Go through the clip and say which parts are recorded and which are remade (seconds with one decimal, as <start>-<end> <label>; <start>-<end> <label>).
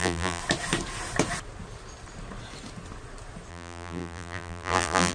0.0-0.4 remade; 0.4-3.5 recorded; 3.5-5.1 remade